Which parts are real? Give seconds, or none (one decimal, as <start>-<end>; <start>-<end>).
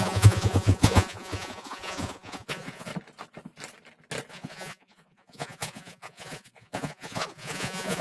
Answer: 2.9-4.3